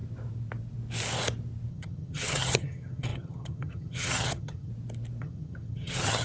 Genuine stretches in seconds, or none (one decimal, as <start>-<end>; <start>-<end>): 0.0-1.7; 4.7-5.2